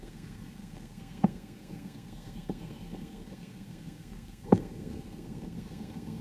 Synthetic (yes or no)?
yes